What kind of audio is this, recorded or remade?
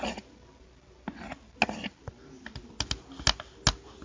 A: recorded